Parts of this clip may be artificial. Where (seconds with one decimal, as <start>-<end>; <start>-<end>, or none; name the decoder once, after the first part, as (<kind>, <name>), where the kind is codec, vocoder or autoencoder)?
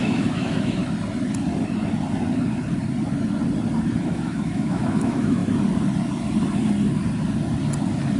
0.0-0.8 (autoencoder, DAC-VAE); 4.0-5.4